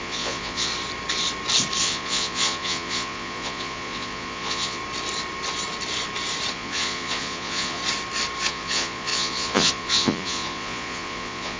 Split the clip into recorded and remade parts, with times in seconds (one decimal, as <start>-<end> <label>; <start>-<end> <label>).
0.0-0.7 remade; 0.7-1.8 recorded; 1.8-4.8 remade; 4.8-6.5 recorded; 6.5-7.8 remade; 7.8-8.5 recorded; 8.5-11.6 remade